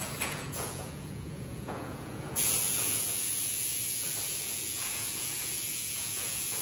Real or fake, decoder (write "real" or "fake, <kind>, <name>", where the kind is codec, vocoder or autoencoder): fake, vocoder, Vocos